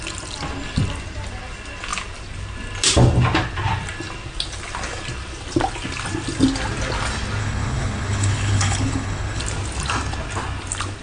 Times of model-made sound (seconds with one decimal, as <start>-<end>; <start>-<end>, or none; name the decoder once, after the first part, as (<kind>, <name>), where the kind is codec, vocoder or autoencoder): 7.4-9.4 (codec, HILCodec)